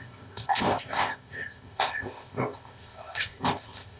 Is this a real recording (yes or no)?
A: no